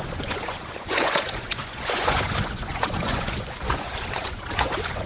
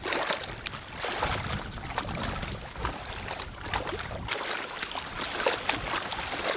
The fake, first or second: first